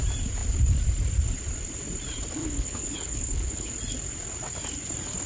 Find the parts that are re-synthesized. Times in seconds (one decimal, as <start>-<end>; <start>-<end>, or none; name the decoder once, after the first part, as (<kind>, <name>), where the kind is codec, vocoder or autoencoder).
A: 2.4-3.7 (codec, HILCodec)